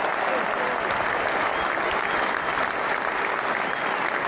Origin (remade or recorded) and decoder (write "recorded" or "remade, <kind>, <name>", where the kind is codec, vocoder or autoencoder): recorded